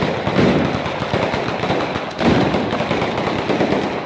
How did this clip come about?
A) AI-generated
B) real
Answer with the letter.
B